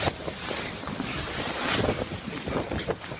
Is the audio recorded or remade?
recorded